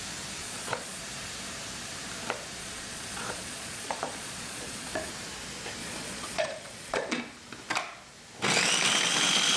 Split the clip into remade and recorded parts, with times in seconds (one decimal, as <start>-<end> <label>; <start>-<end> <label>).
0.0-0.4 recorded; 0.4-1.0 remade; 1.0-2.6 recorded; 2.6-5.1 remade; 5.1-5.8 recorded; 5.8-7.2 remade; 7.2-9.6 recorded